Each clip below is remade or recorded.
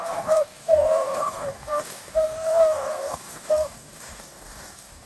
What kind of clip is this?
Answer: remade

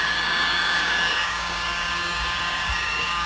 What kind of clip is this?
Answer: remade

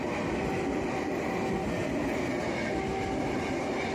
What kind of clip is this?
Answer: recorded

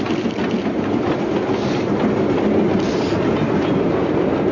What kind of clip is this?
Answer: recorded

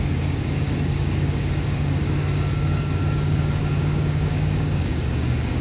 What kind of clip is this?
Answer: remade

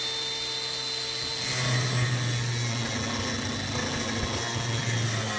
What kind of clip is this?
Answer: recorded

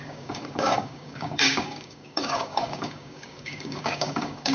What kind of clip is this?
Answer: remade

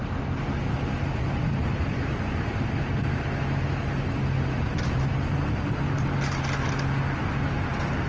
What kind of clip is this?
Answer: recorded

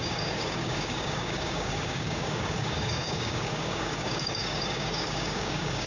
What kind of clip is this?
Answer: remade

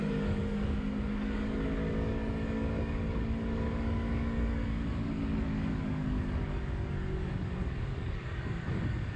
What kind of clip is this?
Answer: remade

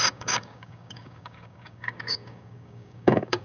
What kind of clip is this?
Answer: remade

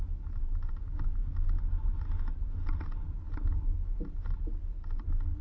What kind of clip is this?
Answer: recorded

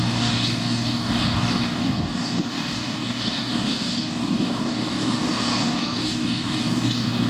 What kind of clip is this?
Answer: remade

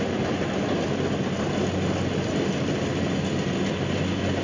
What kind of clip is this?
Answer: recorded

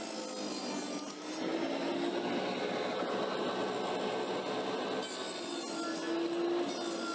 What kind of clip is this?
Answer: recorded